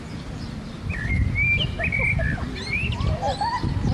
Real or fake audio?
real